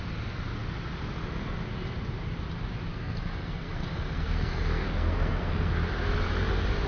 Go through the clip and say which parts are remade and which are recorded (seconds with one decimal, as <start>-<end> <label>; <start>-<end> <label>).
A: 0.0-2.9 recorded; 2.9-5.7 remade; 5.7-6.9 recorded